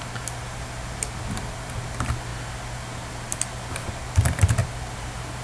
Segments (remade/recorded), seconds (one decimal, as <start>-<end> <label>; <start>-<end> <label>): 0.0-4.6 recorded; 4.6-5.4 remade